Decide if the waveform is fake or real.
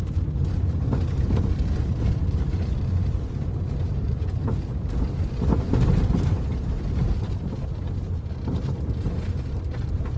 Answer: real